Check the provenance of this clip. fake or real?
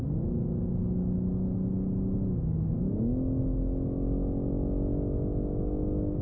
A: real